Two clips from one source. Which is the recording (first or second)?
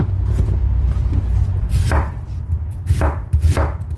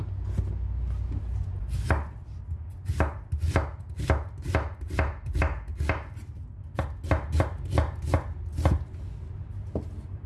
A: second